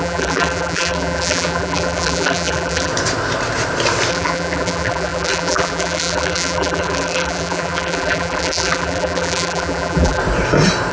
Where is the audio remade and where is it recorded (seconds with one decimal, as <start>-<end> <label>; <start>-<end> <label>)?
0.0-2.9 remade; 2.9-4.1 recorded; 4.1-10.2 remade; 10.2-10.9 recorded